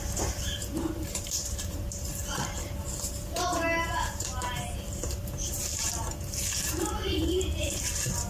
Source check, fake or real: fake